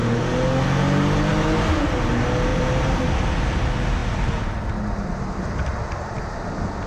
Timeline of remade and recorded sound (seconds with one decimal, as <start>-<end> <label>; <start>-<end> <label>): 0.0-2.5 recorded; 2.5-3.1 remade; 3.1-6.9 recorded